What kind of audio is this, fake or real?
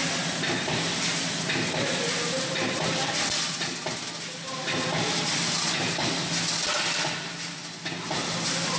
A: real